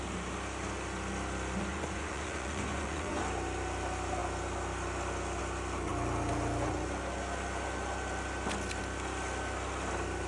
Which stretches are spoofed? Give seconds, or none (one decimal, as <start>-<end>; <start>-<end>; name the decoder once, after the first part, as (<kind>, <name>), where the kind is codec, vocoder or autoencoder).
1.7-3.2 (vocoder, Vocos)